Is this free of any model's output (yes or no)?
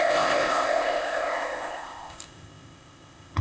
no